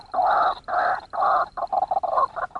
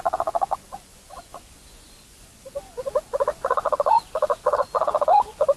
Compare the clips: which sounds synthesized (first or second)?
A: second